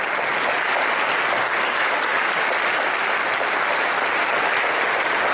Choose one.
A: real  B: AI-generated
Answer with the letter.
A